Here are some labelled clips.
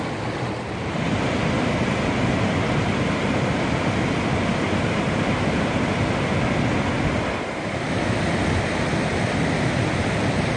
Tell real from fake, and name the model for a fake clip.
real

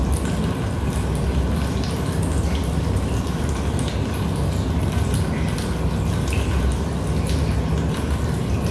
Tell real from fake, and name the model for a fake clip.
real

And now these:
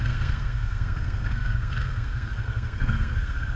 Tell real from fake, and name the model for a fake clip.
fake, codec, SNAC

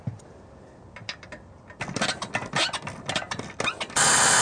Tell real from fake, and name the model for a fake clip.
real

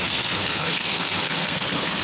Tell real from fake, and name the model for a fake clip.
fake, codec, SNAC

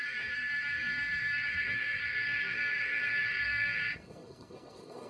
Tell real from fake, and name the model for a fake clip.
fake, codec, SNAC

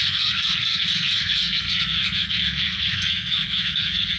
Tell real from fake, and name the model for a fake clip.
fake, codec, SNAC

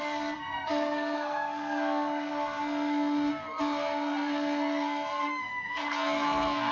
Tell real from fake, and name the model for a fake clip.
fake, codec, SNAC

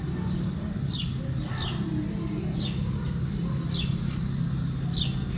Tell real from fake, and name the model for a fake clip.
real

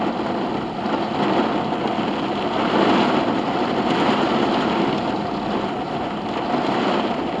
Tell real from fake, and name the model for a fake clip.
real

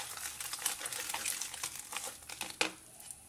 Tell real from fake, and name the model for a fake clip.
real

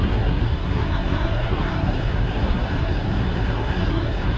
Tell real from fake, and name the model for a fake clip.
fake, codec, SNAC